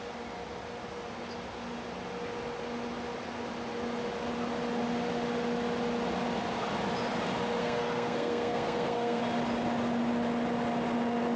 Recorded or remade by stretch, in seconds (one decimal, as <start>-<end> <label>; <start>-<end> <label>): 0.0-7.6 recorded; 7.6-9.2 remade; 9.2-11.4 recorded